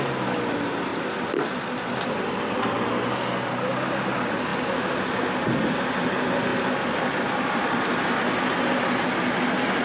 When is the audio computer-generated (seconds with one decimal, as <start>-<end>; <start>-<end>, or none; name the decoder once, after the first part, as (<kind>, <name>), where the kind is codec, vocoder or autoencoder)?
0.9-3.5 (vocoder, BigVGAN v2); 6.5-8.6

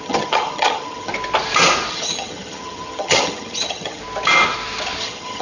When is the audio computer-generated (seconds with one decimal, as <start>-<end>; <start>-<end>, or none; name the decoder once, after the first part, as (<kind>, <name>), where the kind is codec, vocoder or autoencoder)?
0.0-1.1 (vocoder, HiFi-GAN); 1.9-4.0; 5.0-5.4

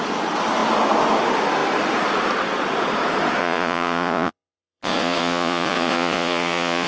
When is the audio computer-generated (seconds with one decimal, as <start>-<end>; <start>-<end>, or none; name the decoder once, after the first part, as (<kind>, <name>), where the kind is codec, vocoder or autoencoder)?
3.4-6.9 (vocoder, Vocos)

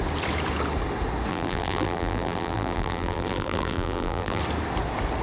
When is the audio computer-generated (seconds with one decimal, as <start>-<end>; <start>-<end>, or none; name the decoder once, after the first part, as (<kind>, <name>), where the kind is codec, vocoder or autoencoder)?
1.3-4.4 (vocoder, BigVGAN v2)